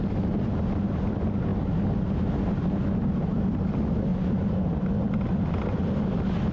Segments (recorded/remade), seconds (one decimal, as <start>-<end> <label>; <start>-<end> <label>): 0.0-6.5 recorded